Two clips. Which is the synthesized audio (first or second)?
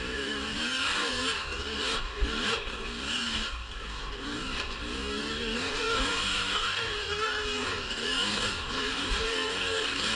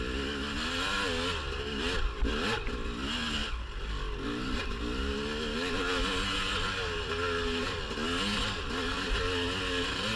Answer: first